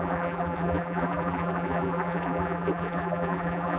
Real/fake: fake